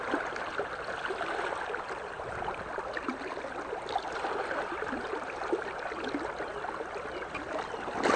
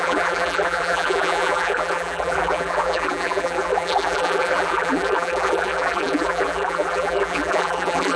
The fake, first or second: second